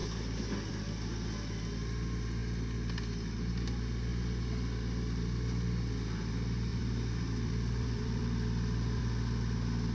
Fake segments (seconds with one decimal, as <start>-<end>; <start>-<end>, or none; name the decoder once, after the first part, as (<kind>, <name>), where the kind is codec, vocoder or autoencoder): 6.7-9.0 (vocoder, BigVGAN v2)